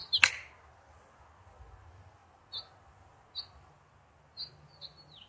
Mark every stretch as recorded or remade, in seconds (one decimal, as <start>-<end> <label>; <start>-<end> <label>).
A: 0.0-5.3 recorded